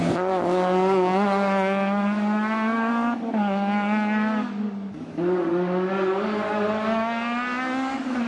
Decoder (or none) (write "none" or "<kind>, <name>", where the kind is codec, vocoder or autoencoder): codec, DAC